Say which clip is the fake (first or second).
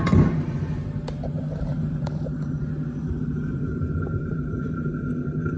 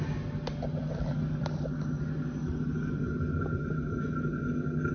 first